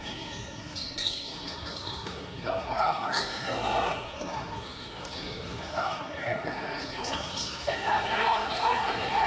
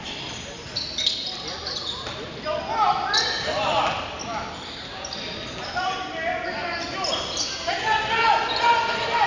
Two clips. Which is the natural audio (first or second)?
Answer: second